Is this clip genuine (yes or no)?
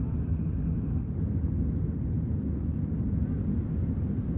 yes